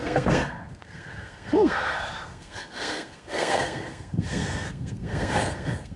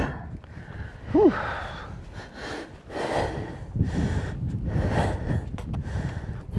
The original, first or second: second